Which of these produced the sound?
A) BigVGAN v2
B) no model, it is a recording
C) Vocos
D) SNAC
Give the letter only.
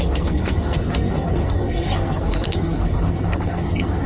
D